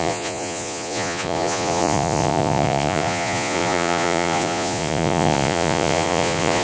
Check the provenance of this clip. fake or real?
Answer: fake